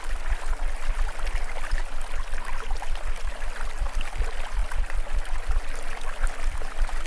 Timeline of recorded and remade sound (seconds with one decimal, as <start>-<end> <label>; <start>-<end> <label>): 0.0-1.8 remade; 1.8-3.3 recorded; 3.3-4.6 remade; 4.6-5.5 recorded; 5.5-7.1 remade